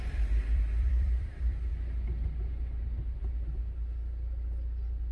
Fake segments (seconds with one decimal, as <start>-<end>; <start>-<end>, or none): 0.0-1.7